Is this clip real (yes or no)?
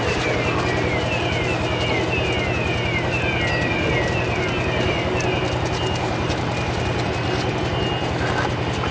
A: yes